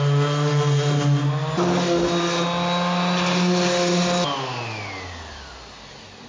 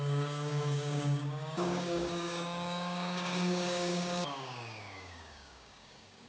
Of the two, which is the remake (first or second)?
second